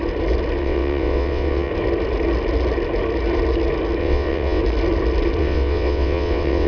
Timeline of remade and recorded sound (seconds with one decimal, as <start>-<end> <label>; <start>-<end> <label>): 0.0-0.6 recorded; 0.6-1.7 remade; 1.7-4.0 recorded; 4.0-4.6 remade; 4.6-5.4 recorded; 5.4-6.7 remade